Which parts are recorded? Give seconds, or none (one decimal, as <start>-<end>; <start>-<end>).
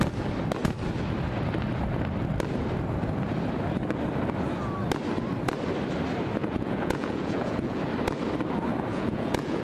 0.0-6.4; 7.8-8.9